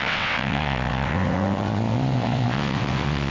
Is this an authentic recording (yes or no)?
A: no